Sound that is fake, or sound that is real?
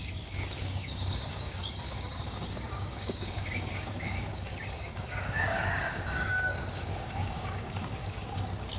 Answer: fake